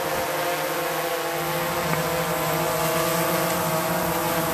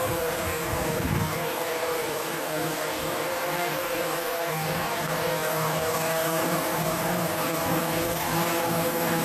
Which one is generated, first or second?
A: second